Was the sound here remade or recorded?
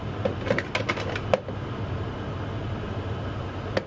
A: recorded